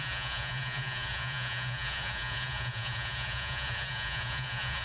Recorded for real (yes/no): no